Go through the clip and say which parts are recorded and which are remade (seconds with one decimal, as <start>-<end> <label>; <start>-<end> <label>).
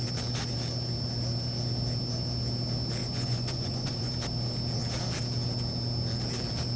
0.0-3.0 recorded; 3.0-4.1 remade; 4.1-6.8 recorded